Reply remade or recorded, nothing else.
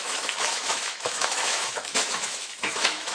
remade